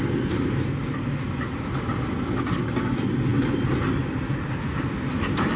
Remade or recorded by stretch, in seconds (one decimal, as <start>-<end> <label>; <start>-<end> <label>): 0.0-5.6 recorded